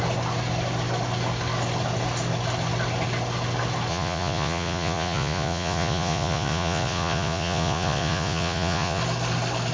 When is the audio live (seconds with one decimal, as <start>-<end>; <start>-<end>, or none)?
0.0-3.9; 9.0-9.7